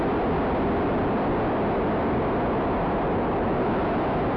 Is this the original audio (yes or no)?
yes